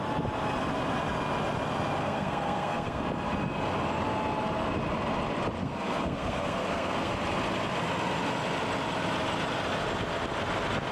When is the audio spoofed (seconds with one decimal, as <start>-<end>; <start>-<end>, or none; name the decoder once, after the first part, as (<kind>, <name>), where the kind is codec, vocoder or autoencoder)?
2.0-3.0 (codec, SNAC); 5.6-7.1